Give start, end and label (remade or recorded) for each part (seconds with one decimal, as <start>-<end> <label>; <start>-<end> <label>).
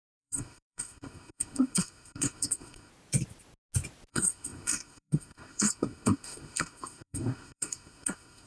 0.0-2.9 remade; 2.9-4.1 recorded; 4.1-8.5 remade